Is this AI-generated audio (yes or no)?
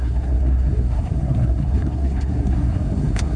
yes